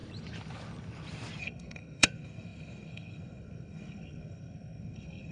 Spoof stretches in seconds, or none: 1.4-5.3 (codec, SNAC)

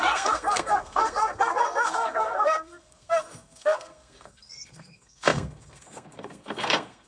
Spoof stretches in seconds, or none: 0.0-7.1 (codec, SNAC)

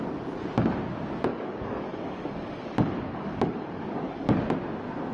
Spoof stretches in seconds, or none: 1.3-4.4 (codec, DAC)

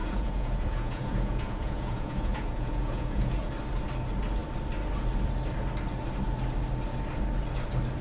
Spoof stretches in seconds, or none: 0.0-3.5 (vocoder, Vocos)